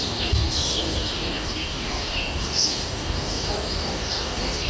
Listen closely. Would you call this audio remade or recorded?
remade